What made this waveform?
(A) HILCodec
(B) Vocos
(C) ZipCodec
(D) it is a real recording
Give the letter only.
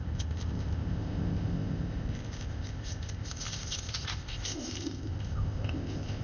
C